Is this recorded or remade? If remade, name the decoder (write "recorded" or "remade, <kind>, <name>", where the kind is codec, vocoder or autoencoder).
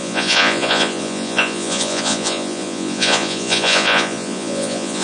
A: remade, vocoder, Vocos